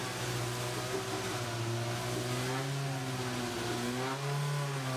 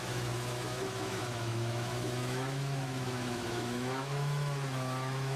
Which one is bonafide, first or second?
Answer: first